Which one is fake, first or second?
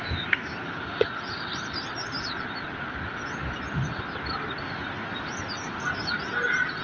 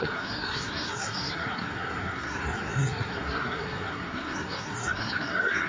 second